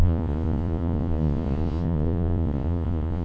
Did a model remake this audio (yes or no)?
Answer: yes